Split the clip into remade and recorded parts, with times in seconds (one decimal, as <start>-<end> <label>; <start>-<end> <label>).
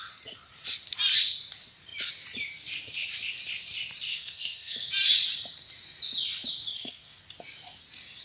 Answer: 0.0-4.1 recorded; 4.1-4.9 remade; 4.9-6.7 recorded; 6.7-7.2 remade; 7.2-8.2 recorded